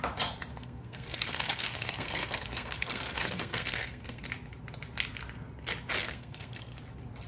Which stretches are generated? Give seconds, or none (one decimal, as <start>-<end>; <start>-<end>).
0.5-4.2; 6.0-6.8